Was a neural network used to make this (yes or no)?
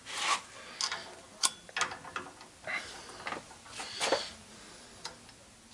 no